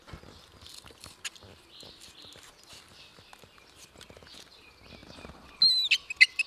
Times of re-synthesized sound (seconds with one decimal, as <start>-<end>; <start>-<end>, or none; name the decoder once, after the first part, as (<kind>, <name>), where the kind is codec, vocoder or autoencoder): none